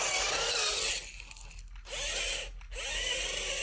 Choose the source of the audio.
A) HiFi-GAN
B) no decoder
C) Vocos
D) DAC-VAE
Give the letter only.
B